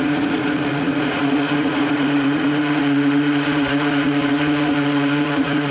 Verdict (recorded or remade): remade